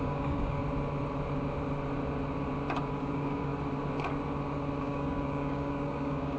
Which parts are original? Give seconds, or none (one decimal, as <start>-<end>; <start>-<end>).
0.6-3.0; 3.5-4.8